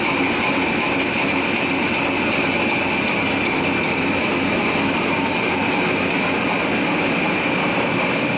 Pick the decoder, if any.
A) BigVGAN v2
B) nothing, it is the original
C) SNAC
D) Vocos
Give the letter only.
B